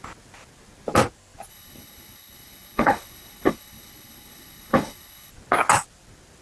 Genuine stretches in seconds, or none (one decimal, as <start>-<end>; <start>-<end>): 0.0-1.5; 5.3-6.4